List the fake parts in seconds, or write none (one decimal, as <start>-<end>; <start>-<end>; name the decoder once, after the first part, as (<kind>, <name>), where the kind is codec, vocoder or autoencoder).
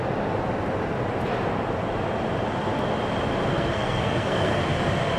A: 3.5-4.6 (codec, SNAC)